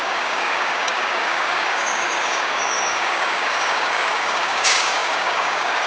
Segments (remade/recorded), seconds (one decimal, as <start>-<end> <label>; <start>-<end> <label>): 0.0-5.9 remade